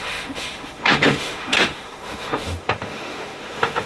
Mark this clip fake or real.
fake